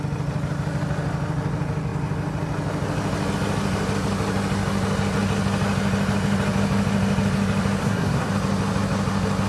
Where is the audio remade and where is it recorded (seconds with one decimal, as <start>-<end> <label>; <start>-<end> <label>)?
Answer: 0.0-7.8 recorded; 7.8-8.3 remade; 8.3-9.5 recorded